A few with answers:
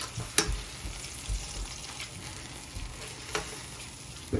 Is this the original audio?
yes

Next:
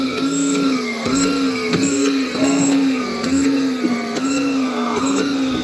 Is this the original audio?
no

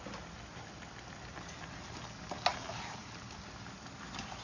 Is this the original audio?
yes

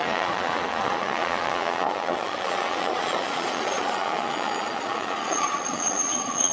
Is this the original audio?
no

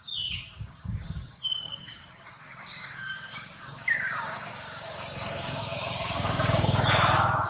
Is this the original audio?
no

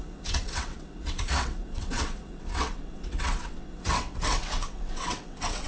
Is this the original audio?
no